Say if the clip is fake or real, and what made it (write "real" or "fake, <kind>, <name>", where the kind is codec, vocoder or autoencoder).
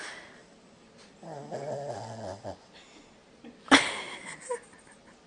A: real